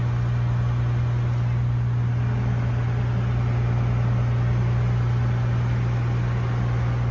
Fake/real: real